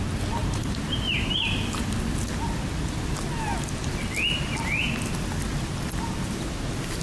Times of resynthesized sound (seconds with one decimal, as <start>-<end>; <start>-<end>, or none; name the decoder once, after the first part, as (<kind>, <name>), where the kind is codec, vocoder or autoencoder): 0.4-1.3 (vocoder, BigVGAN v2)